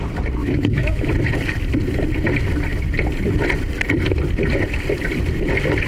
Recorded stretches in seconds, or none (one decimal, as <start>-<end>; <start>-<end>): 0.0-0.4; 1.1-5.9